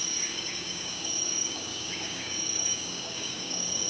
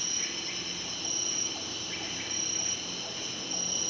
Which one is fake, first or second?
first